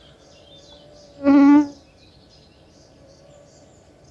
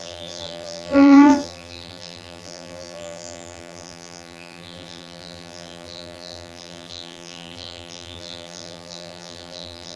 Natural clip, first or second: first